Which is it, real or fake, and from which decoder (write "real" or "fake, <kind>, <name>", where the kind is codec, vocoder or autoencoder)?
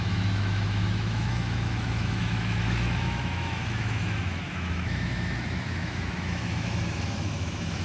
fake, autoencoder, DAC-VAE